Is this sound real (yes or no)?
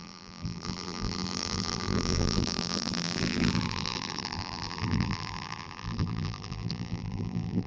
no